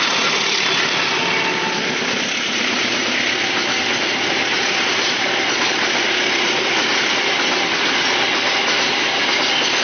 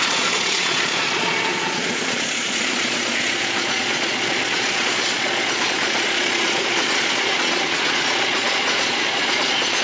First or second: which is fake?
second